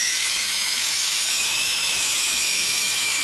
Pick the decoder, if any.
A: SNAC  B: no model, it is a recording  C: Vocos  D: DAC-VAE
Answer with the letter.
D